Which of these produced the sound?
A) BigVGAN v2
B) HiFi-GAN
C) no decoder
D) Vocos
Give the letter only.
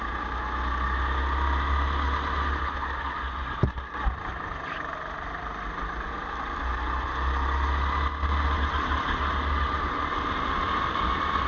C